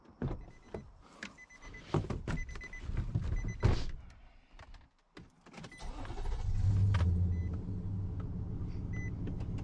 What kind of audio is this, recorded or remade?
recorded